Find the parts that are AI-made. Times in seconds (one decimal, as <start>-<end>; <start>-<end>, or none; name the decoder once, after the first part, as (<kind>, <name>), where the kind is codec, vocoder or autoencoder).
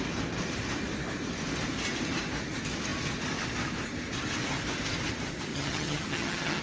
5.5-6.6 (vocoder, HiFi-GAN)